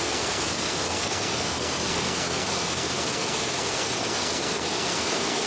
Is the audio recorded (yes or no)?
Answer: no